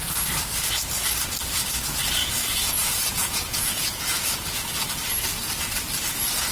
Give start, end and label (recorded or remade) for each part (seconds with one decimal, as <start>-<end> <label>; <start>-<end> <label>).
0.0-2.2 recorded; 2.2-5.0 remade; 5.0-6.5 recorded